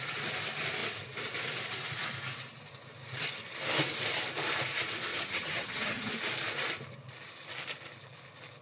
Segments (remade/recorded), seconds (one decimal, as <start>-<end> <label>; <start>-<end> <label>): 0.0-5.1 recorded; 5.1-6.1 remade; 6.1-8.6 recorded